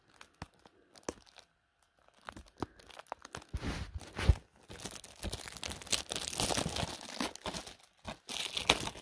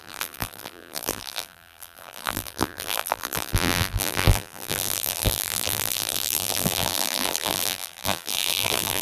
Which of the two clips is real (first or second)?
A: first